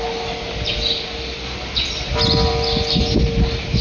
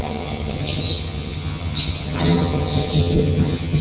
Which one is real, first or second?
first